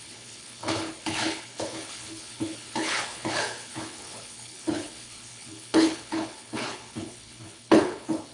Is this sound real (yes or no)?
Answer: no